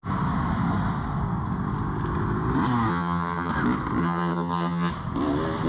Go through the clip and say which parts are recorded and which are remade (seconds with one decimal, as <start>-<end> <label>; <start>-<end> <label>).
0.0-2.9 recorded; 2.9-3.5 remade; 3.5-4.0 recorded; 4.0-4.9 remade; 4.9-5.7 recorded